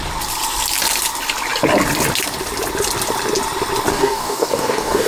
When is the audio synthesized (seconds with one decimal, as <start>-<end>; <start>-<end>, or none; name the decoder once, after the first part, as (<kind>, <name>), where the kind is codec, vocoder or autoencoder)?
3.9-5.1 (codec, DAC)